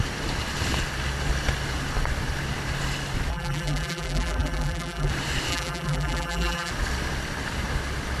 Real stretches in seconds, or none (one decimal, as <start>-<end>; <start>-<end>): 0.0-3.3; 5.1-5.5; 6.7-8.2